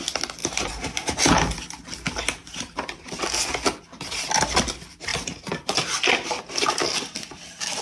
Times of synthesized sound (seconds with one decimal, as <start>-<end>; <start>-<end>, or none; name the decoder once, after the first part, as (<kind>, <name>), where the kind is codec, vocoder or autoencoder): 0.4-1.2 (vocoder, BigVGAN v2); 2.4-3.1; 5.1-6.3